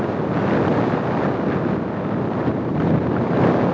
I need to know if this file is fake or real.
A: real